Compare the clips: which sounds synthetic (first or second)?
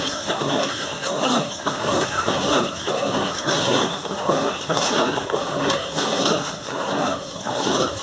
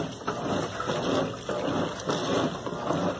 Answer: first